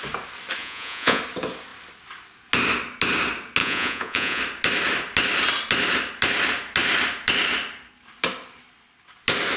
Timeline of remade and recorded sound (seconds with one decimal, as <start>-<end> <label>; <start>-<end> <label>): 0.0-0.6 recorded; 0.6-1.2 remade; 1.2-3.6 recorded; 3.6-4.4 remade; 4.4-9.6 recorded